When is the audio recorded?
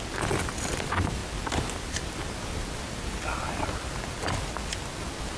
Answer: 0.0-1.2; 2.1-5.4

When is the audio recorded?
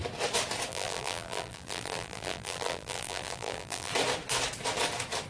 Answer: 0.0-0.7; 3.9-5.3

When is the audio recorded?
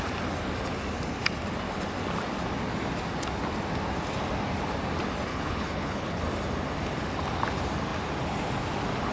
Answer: 0.0-5.3; 6.2-9.1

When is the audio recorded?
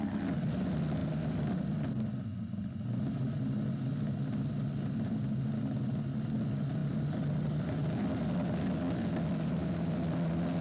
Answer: 0.0-10.6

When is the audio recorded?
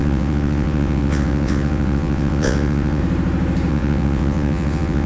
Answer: 3.0-3.7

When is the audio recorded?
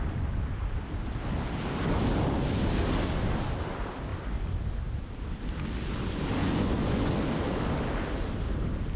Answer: 0.0-6.4; 7.1-9.0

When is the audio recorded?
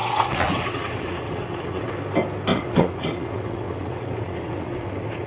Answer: 1.9-2.5